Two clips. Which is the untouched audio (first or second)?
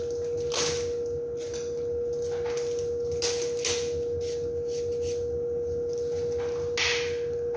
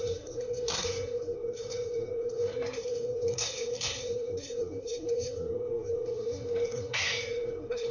first